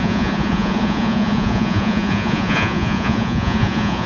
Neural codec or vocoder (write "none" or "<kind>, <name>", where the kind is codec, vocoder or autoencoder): vocoder, Vocos